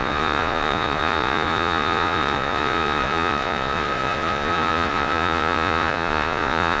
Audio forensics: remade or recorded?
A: remade